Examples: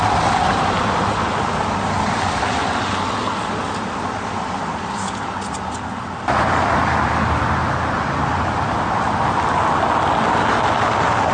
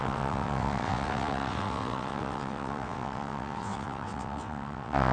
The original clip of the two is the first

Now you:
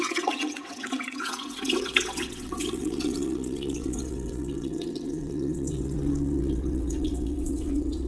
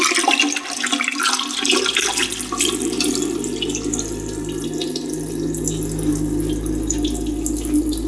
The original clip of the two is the second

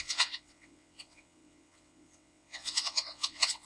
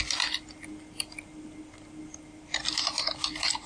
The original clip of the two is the second